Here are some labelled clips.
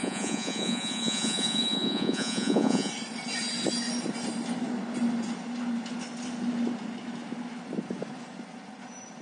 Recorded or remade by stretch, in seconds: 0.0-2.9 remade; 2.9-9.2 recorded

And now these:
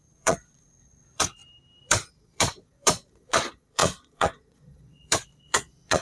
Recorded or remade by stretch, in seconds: 0.0-1.4 remade; 1.4-2.1 recorded; 2.1-6.0 remade

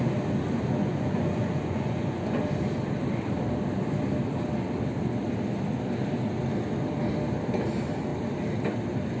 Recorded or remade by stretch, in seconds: 0.0-0.8 recorded; 0.8-2.4 remade; 2.4-9.2 recorded

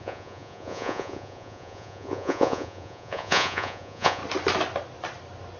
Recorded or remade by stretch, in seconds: 0.0-4.2 remade; 4.2-5.6 recorded

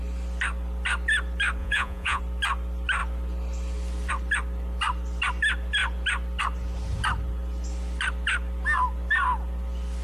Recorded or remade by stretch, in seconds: 0.0-1.6 recorded; 1.6-2.2 remade; 2.2-10.0 recorded

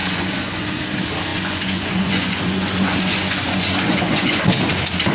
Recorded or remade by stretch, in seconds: 0.0-0.8 remade; 0.8-1.3 recorded; 1.3-4.4 remade; 4.4-5.1 recorded